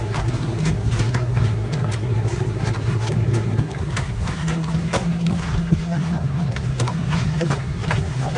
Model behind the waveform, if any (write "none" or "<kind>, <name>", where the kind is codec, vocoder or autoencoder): codec, SNAC